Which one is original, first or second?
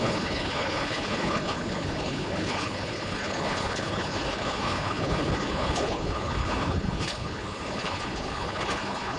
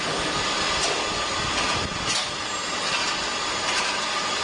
second